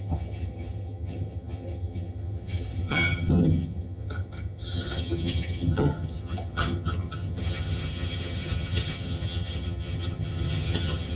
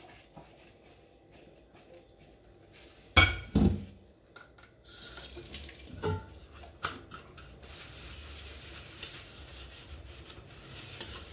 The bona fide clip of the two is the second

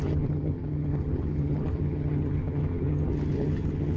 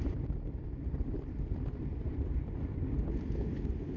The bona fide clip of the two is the second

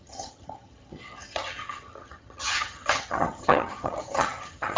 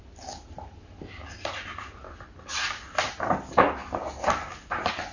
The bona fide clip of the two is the second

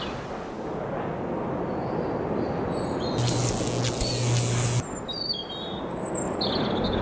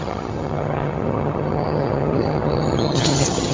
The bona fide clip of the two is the first